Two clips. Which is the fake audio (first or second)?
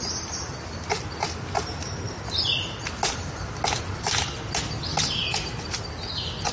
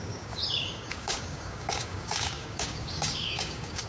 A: second